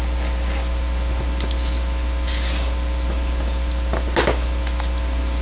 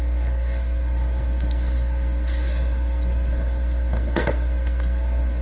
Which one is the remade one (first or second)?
second